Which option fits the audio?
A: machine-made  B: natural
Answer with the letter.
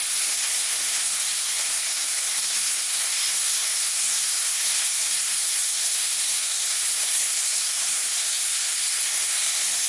A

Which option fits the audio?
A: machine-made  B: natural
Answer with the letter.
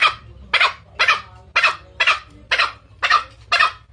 B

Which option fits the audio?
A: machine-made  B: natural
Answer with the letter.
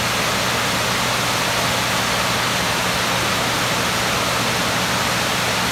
B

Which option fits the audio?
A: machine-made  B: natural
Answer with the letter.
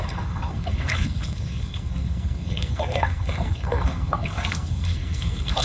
A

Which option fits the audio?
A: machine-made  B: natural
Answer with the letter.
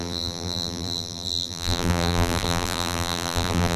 A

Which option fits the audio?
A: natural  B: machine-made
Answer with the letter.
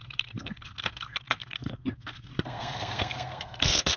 B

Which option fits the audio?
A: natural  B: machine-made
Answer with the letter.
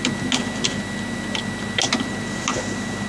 A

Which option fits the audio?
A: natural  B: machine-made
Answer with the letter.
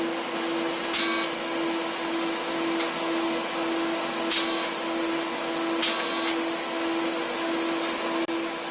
A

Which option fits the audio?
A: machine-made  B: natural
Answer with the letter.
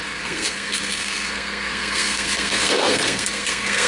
A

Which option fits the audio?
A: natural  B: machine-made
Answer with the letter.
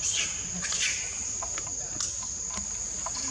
A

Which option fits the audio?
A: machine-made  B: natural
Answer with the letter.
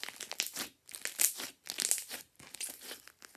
B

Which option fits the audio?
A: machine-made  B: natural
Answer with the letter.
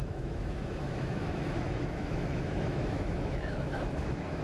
A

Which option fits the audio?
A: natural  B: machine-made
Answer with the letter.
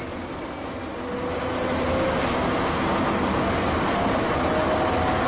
A